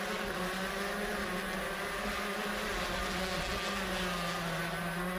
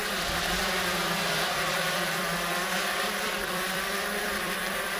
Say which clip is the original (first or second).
first